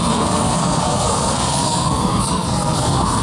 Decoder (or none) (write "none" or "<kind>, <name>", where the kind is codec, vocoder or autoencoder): codec, SNAC